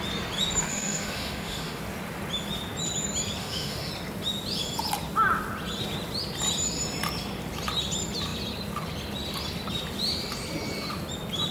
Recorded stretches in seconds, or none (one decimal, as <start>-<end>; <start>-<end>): 0.0-0.7; 1.8-3.4; 3.9-11.5